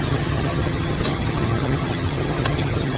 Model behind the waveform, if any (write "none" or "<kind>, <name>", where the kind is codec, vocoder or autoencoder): vocoder, HiFi-GAN